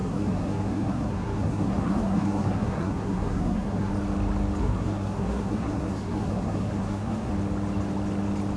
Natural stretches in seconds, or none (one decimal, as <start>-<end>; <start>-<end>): 3.9-4.6; 7.3-8.6